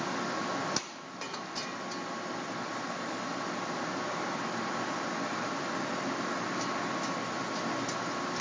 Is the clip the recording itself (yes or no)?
yes